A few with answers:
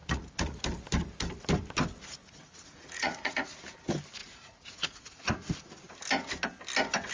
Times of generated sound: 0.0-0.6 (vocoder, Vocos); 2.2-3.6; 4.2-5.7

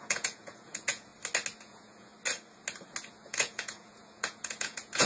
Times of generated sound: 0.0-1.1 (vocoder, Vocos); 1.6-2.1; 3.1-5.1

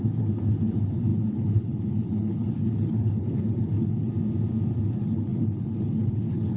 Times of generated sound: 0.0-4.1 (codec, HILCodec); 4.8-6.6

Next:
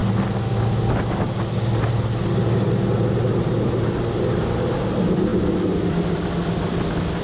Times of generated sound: none

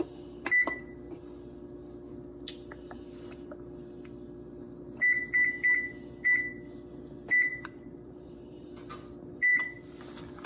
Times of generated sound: 7.5-8.7 (vocoder, BigVGAN v2); 9.5-10.0

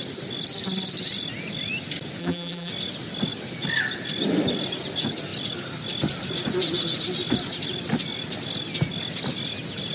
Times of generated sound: 2.2-2.7 (vocoder, BigVGAN v2)

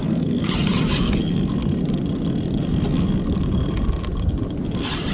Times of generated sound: 0.0-0.5 (codec, SNAC)